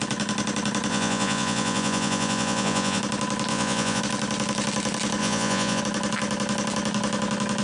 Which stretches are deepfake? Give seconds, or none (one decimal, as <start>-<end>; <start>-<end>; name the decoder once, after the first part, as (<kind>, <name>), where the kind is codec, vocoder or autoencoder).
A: 0.9-3.0 (vocoder, Vocos); 3.5-4.0; 5.2-5.8